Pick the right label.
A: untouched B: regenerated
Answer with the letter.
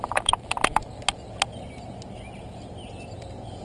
A